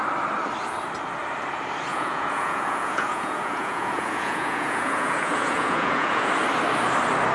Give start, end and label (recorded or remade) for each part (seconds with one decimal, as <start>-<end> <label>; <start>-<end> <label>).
0.0-1.9 recorded; 1.9-6.3 remade; 6.3-7.3 recorded